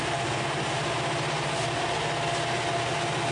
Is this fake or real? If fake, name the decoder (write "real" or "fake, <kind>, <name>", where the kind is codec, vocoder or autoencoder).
real